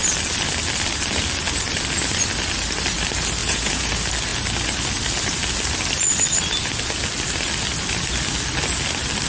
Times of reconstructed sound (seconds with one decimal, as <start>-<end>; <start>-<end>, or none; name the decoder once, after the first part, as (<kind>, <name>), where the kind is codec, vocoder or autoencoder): 3.4-3.9 (vocoder, Vocos)

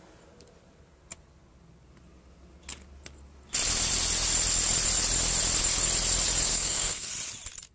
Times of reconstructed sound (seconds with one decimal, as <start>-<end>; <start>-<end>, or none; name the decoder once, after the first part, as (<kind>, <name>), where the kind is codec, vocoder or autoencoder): 6.5-7.1 (codec, SNAC)

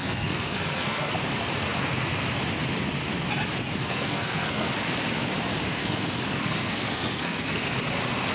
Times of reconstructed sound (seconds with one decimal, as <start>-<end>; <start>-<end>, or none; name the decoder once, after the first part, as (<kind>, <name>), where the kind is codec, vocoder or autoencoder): 0.0-1.1 (codec, SNAC); 3.8-4.7; 5.8-7.7